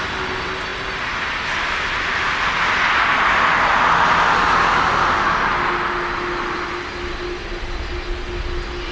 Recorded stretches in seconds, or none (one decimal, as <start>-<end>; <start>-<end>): 0.0-8.9